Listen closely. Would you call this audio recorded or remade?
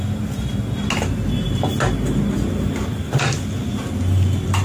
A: recorded